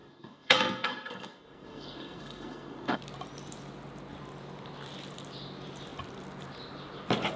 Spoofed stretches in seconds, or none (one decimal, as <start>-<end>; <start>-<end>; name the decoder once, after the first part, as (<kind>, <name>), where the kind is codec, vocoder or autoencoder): 0.0-3.0 (codec, SNAC)